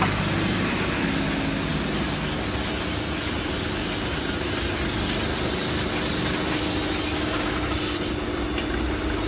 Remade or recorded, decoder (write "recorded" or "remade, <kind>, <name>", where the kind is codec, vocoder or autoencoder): recorded